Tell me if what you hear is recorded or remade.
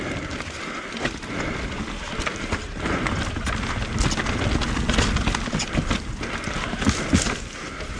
recorded